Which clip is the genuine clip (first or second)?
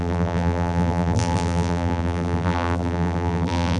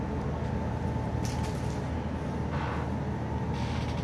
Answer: second